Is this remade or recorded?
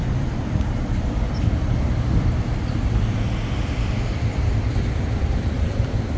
remade